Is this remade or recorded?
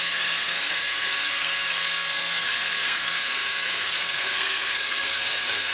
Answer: remade